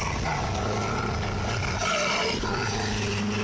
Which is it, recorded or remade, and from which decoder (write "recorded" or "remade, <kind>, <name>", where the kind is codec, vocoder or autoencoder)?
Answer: recorded